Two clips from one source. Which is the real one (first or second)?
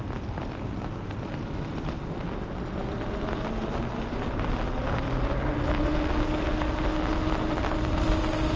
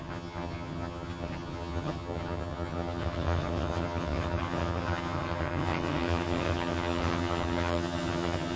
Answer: first